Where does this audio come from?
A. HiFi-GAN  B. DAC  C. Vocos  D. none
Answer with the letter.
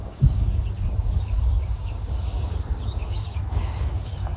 B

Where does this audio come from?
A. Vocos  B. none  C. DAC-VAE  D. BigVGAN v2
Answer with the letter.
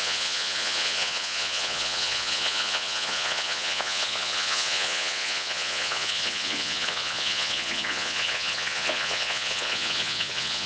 A